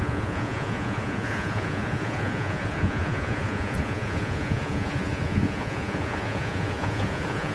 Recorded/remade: remade